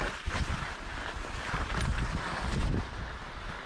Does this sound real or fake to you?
real